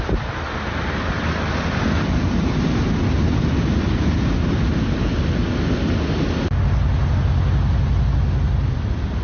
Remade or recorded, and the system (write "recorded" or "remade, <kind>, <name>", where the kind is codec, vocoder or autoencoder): recorded